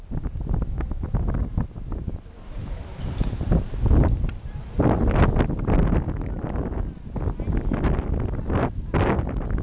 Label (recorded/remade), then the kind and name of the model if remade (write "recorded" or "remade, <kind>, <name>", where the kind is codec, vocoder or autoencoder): recorded